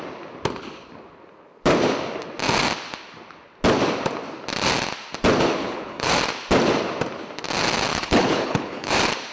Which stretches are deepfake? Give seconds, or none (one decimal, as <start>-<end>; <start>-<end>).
5.6-6.1; 7.9-8.9